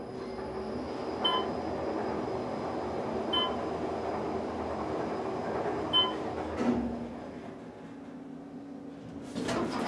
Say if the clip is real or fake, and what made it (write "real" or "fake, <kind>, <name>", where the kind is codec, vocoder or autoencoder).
real